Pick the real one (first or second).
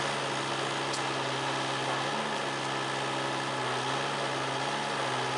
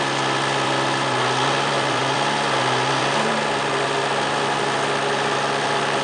first